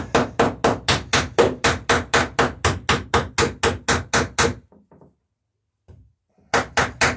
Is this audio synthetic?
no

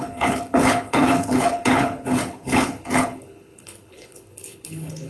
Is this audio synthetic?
yes